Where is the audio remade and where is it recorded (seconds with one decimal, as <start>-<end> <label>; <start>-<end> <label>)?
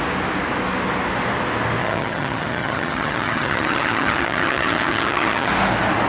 0.0-1.8 recorded; 1.8-5.5 remade; 5.5-6.1 recorded